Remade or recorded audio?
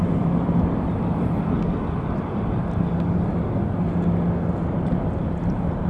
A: recorded